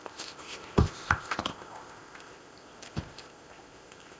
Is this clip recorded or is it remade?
remade